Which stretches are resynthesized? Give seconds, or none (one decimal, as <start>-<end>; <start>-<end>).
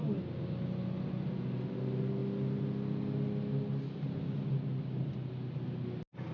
none